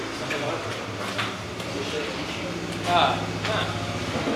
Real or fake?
real